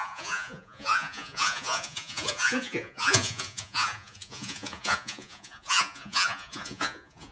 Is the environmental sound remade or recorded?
remade